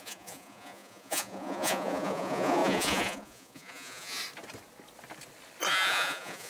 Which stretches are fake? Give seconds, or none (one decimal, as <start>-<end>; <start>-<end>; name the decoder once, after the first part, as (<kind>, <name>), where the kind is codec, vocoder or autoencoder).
0.0-4.2 (vocoder, Vocos); 5.7-6.5